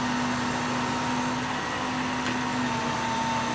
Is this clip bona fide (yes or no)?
yes